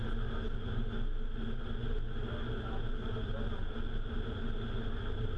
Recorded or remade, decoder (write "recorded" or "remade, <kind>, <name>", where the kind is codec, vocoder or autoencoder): recorded